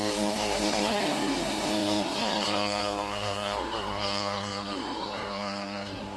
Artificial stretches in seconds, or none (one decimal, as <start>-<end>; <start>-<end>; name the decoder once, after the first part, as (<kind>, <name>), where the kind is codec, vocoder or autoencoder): 0.0-6.2 (codec, SNAC)